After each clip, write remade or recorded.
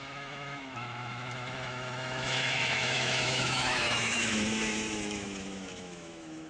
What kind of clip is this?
remade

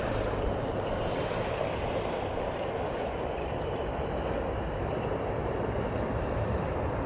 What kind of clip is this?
remade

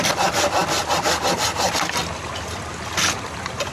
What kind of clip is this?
recorded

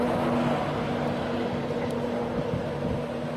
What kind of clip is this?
recorded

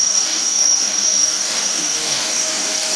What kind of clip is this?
remade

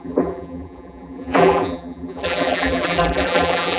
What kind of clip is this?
remade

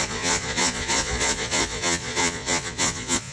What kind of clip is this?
remade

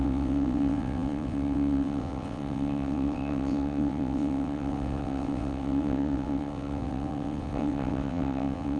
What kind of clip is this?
remade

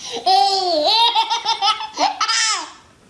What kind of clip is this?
recorded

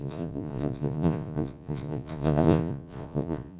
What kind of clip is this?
remade